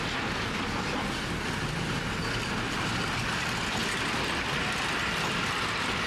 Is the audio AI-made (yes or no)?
no